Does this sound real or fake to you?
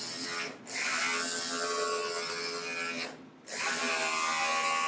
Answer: real